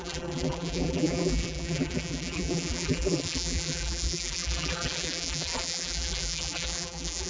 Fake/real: fake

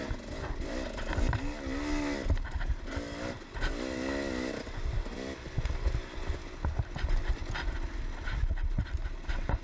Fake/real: real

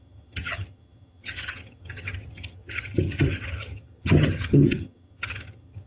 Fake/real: fake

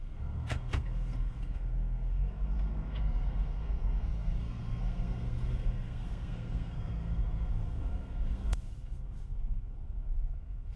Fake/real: fake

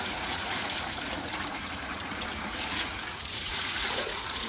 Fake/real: fake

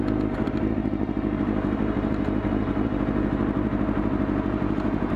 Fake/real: real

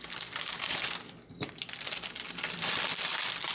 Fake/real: fake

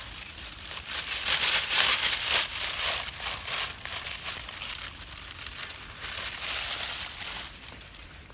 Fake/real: fake